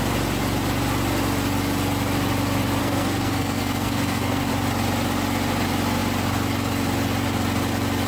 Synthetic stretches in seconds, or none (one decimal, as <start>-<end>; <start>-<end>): 2.8-4.5